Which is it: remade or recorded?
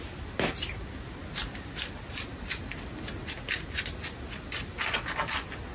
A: recorded